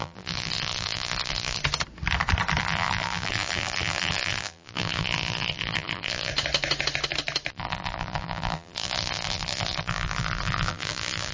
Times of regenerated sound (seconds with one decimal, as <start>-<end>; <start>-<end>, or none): 0.0-1.6; 2.6-6.3; 7.5-11.3